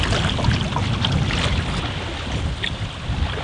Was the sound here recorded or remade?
recorded